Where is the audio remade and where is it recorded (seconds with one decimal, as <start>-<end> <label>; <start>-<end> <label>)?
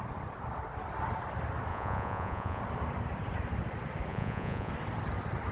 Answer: 0.0-1.7 recorded; 1.7-2.6 remade; 2.6-4.1 recorded; 4.1-4.7 remade; 4.7-5.5 recorded